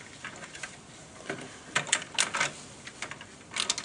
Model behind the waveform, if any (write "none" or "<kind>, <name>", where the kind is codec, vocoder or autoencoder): none